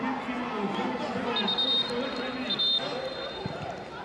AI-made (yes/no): no